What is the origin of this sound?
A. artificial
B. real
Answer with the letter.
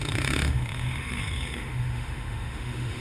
A